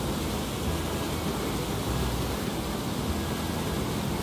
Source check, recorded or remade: recorded